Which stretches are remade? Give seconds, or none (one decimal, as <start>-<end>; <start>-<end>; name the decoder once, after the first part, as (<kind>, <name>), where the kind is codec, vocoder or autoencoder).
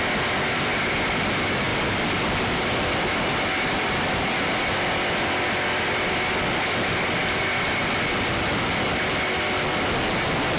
none